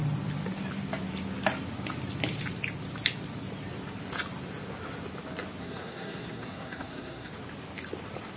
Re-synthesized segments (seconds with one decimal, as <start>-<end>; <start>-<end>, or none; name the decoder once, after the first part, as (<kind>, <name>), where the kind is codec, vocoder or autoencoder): 5.6-7.3 (codec, SNAC)